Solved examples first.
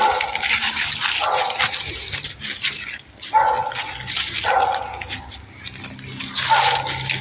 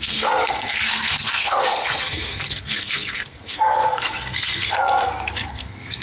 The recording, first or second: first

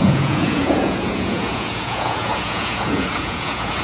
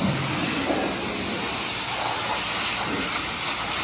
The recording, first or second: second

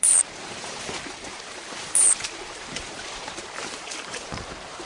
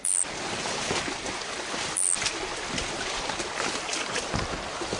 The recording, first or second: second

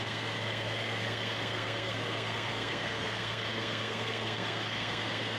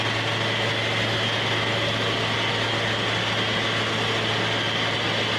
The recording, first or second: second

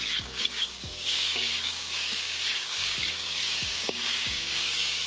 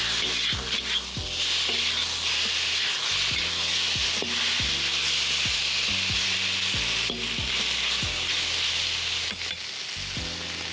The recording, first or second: second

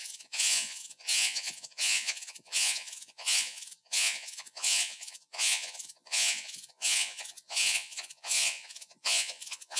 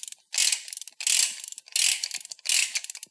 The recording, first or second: second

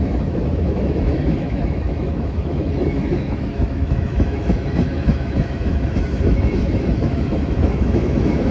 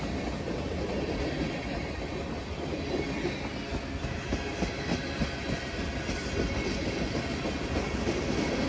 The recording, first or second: second